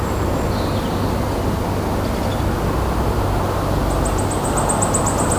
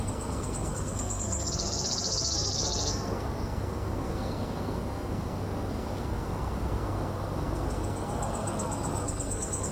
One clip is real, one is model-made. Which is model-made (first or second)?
second